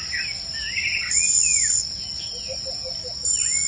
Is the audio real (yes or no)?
yes